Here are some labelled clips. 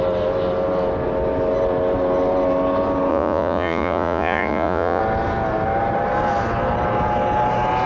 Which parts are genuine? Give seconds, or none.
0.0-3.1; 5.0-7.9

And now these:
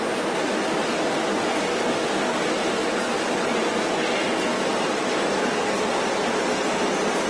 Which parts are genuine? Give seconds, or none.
0.0-7.3